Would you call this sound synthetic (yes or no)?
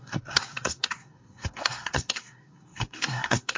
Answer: yes